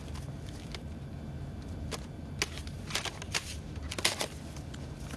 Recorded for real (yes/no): yes